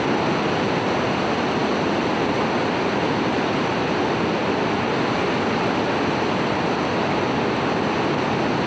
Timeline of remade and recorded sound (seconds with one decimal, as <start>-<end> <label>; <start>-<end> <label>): 0.0-8.7 recorded